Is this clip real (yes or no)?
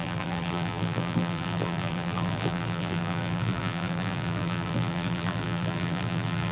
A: no